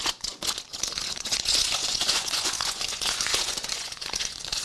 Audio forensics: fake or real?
fake